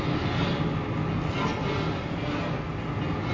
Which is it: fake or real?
real